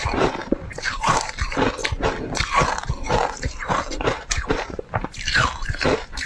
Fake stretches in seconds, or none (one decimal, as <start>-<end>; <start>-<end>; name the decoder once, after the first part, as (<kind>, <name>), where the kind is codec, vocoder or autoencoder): 0.0-1.8 (vocoder, BigVGAN v2); 3.9-6.3